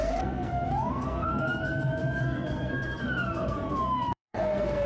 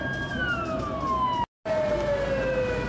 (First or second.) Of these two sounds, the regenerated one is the first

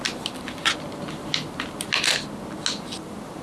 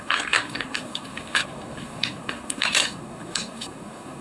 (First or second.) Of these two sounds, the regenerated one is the second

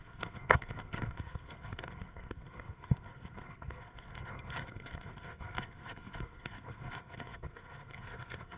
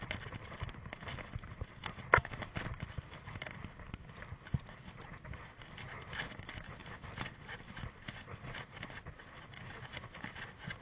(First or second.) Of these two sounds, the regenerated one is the first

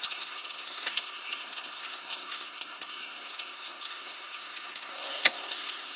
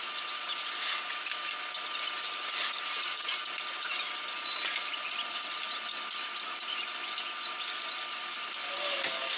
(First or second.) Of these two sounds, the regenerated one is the first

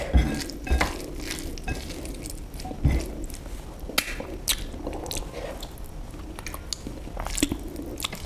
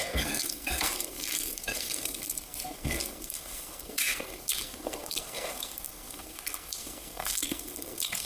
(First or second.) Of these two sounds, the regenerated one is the second